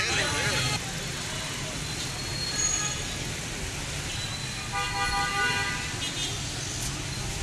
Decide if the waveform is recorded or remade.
recorded